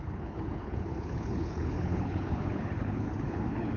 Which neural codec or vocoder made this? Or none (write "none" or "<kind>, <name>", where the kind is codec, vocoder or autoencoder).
codec, HILCodec